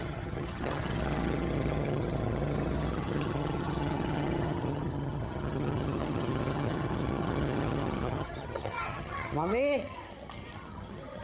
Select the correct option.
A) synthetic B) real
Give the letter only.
A